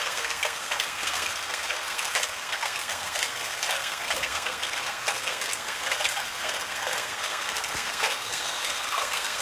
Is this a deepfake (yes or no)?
yes